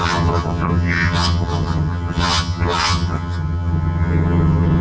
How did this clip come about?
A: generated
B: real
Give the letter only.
A